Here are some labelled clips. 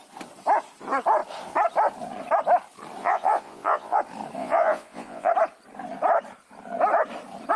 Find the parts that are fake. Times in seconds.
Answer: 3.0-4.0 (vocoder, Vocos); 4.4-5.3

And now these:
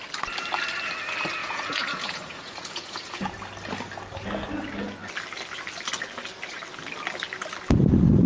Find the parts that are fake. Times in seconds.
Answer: 1.4-3.3 (vocoder, Vocos)

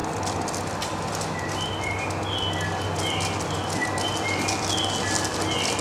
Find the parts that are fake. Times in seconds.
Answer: none

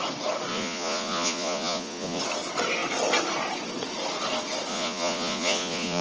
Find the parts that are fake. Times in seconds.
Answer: 0.5-2.2 (vocoder, Vocos); 4.7-6.0